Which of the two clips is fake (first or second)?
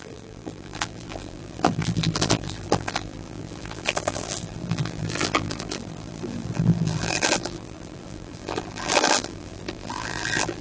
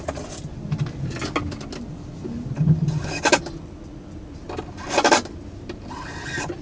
first